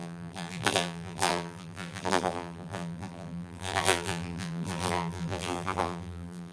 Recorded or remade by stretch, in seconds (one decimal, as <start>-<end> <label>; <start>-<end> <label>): 0.0-6.5 remade